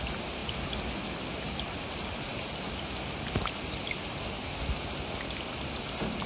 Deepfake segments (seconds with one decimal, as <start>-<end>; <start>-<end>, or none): none